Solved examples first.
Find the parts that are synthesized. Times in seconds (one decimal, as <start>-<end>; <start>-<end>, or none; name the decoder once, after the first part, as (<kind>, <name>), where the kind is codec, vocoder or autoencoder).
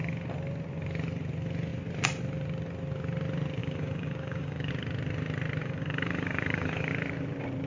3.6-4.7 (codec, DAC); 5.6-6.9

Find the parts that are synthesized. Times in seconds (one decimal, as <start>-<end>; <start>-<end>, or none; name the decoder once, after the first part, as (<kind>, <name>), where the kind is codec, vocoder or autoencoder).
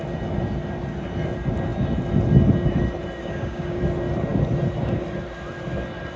3.2-3.8 (codec, DAC)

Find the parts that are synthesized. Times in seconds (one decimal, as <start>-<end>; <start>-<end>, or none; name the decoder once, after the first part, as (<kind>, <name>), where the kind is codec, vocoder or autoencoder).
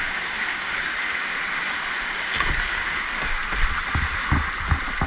0.0-0.9 (codec, DAC); 2.6-3.4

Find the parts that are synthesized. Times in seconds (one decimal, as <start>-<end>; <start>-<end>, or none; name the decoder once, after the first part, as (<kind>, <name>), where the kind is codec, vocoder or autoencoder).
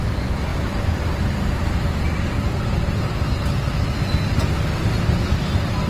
none